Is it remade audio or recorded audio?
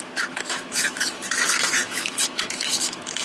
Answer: remade